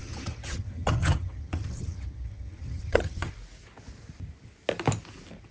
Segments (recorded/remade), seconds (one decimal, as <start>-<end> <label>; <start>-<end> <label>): 0.0-3.3 remade; 3.3-5.5 recorded